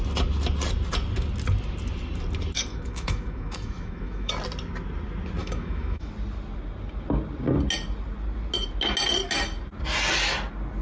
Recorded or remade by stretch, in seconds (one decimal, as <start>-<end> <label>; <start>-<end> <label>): 0.0-2.7 recorded; 2.7-4.3 remade; 4.3-5.4 recorded; 5.4-6.1 remade; 6.1-10.8 recorded